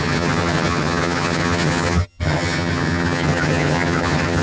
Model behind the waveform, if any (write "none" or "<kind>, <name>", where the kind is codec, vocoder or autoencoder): vocoder, HiFi-GAN